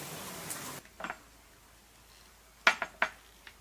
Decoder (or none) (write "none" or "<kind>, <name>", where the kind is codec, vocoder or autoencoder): none